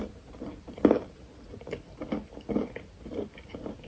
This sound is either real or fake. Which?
real